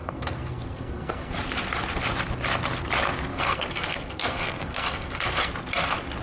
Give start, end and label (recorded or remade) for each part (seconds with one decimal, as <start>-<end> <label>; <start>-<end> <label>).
0.0-1.3 remade; 1.3-3.3 recorded; 3.3-5.5 remade; 5.5-6.2 recorded